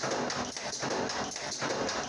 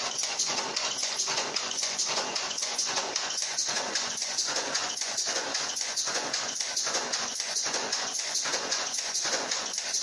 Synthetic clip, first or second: second